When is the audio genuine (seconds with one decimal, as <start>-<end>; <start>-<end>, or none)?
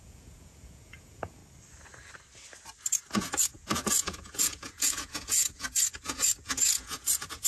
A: 1.4-2.9